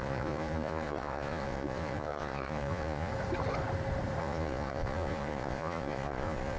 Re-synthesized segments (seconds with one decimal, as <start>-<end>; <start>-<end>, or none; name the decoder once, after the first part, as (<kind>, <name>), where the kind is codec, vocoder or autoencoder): 0.0-3.1 (vocoder, Vocos); 4.2-6.6